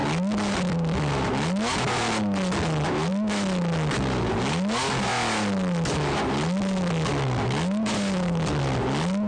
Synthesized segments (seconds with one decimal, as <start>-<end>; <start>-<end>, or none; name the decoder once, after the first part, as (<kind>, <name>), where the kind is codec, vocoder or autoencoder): none